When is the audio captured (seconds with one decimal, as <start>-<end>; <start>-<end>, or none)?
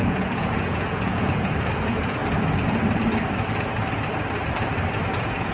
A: 2.2-5.1